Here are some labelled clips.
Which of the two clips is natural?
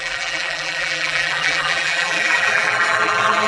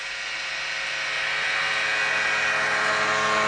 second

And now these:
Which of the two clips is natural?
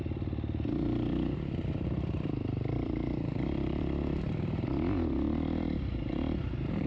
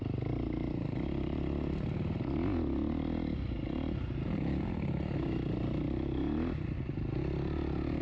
second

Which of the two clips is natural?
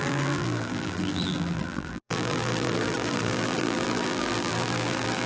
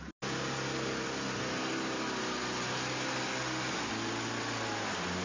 second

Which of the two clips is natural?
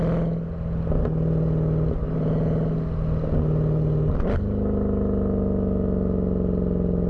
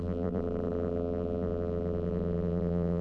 first